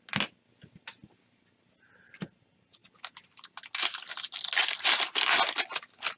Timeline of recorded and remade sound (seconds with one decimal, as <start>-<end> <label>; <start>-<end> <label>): 0.0-6.2 recorded